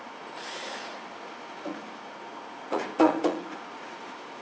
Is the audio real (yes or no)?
no